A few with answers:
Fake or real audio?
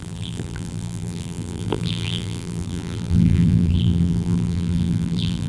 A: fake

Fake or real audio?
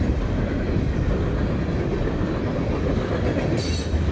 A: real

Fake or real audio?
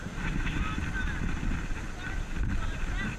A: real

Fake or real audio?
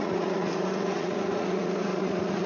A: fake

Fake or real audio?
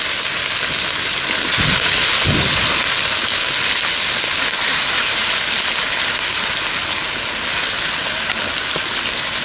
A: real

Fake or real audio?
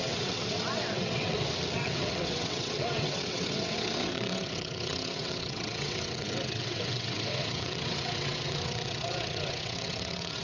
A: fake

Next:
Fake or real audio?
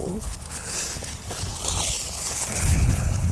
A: fake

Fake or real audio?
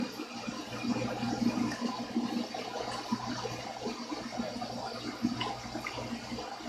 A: real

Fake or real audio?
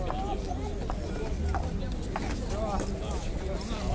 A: real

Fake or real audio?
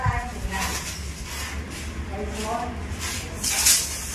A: real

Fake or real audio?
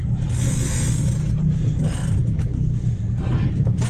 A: real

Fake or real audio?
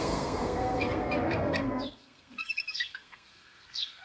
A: fake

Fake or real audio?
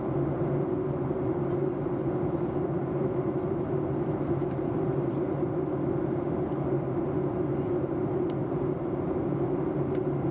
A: real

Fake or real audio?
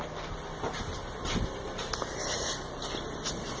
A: real